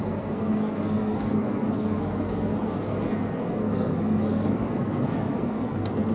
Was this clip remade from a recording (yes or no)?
yes